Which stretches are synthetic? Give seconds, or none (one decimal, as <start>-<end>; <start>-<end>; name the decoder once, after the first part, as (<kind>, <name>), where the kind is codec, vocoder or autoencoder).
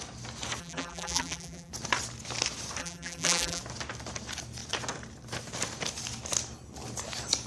0.6-1.7 (vocoder, BigVGAN v2); 2.8-3.6